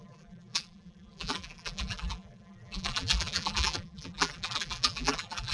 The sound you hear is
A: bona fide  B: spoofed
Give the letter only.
B